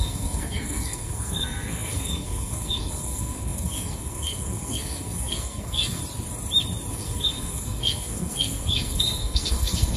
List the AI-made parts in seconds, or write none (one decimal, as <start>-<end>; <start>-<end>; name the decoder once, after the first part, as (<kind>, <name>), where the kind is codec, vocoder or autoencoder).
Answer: 0.0-6.0 (codec, SNAC); 6.9-10.0